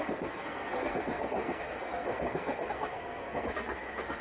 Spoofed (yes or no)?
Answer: yes